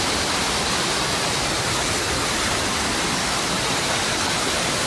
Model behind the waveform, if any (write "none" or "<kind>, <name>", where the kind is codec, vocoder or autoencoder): none